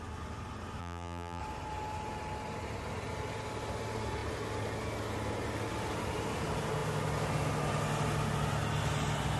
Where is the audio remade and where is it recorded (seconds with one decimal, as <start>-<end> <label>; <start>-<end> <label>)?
0.0-0.8 recorded; 0.8-1.4 remade; 1.4-9.4 recorded